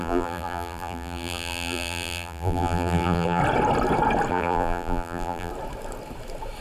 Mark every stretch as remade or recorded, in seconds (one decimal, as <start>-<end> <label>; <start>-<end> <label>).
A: 0.0-3.4 remade; 3.4-4.3 recorded; 4.3-5.5 remade; 5.5-6.6 recorded